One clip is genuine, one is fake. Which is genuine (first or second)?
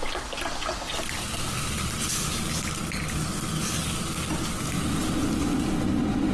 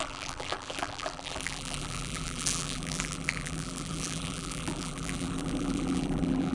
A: first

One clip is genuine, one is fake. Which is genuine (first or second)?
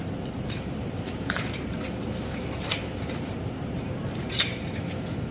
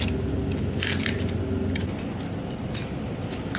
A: second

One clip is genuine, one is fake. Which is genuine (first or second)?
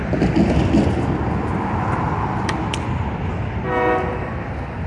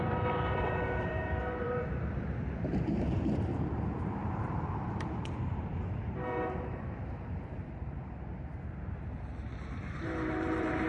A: first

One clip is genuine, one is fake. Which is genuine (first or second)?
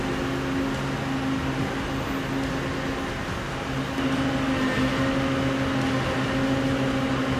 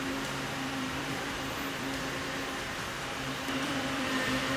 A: first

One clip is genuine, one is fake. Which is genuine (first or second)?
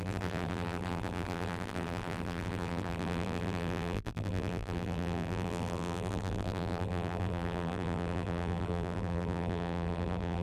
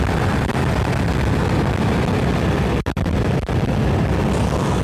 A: second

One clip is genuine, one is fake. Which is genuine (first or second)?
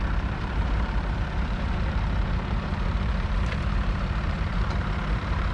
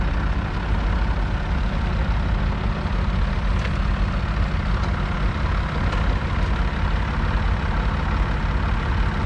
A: second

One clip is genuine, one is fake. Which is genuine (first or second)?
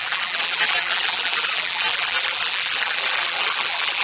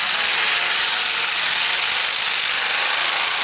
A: second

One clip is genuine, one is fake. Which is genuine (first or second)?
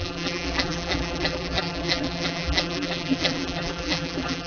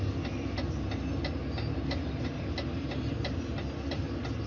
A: second